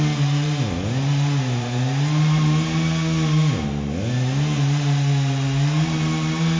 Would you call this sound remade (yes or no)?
no